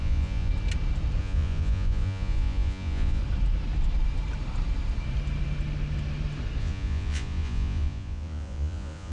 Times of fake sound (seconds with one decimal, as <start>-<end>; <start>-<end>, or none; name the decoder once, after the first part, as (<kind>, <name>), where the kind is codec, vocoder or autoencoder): 0.0-0.5 (vocoder, Vocos); 1.2-3.2; 6.6-9.1